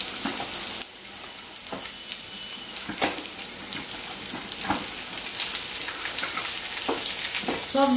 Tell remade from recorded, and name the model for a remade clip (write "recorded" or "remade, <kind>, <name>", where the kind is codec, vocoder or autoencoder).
recorded